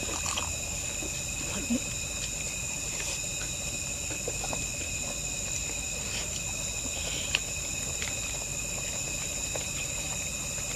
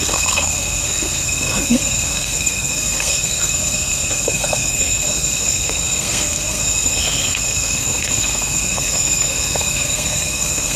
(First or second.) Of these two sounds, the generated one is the second